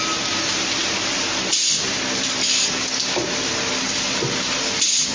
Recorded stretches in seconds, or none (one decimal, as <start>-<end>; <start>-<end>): 0.0-5.1